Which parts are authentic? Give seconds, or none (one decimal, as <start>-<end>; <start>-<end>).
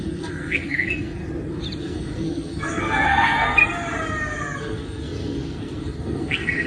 1.2-1.8; 3.6-4.6